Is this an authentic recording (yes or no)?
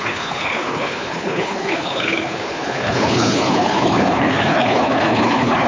no